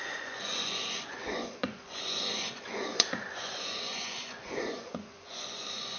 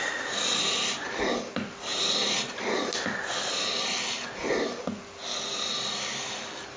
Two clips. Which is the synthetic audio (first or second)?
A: first